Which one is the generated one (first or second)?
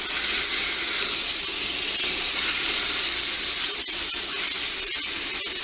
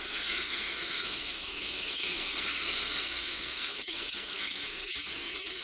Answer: second